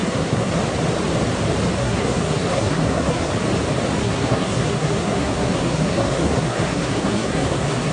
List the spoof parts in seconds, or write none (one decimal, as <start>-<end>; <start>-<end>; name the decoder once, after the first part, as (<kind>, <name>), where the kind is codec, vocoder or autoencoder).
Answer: 0.0-0.5 (codec, SNAC); 1.8-3.3; 4.0-7.9